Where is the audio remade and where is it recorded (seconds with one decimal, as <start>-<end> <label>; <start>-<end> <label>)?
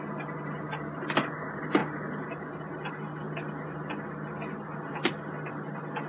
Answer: 0.0-6.1 recorded